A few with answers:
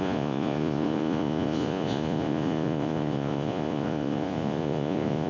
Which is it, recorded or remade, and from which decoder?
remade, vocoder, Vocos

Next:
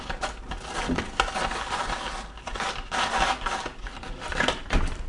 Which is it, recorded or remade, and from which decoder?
recorded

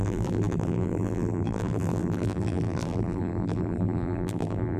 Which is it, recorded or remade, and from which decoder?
remade, vocoder, BigVGAN v2